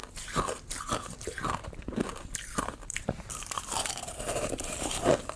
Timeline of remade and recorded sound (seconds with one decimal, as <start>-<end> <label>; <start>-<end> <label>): 0.0-5.4 remade